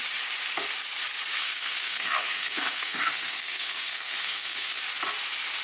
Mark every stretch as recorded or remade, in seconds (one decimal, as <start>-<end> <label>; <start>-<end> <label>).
0.0-1.4 recorded; 1.4-4.8 remade; 4.8-5.6 recorded